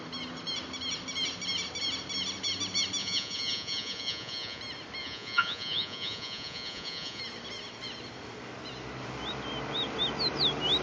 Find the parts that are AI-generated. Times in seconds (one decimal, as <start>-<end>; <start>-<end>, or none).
3.0-4.6; 5.0-7.2